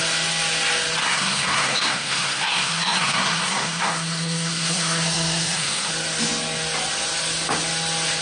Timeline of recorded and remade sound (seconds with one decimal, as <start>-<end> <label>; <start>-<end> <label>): 0.0-1.0 recorded; 1.0-5.9 remade; 5.9-8.2 recorded